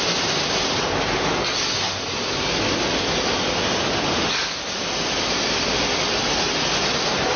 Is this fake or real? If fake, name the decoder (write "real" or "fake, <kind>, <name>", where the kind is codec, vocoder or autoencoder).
real